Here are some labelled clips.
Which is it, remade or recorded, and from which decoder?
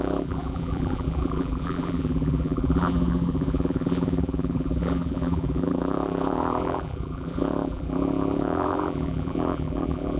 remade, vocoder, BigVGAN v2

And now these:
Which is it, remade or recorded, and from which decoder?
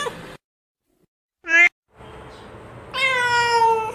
recorded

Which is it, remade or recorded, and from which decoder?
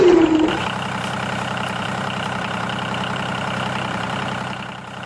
remade, vocoder, BigVGAN v2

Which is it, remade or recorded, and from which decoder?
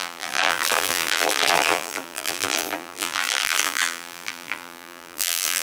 remade, vocoder, BigVGAN v2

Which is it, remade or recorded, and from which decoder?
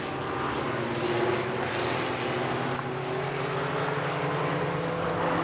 recorded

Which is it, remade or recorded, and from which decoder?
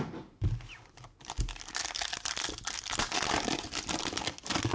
recorded